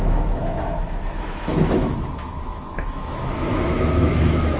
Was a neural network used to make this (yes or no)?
yes